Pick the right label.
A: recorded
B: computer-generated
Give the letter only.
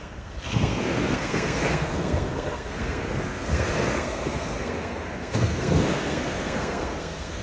B